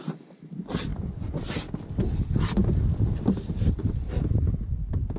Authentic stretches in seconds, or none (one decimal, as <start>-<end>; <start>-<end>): 0.0-5.2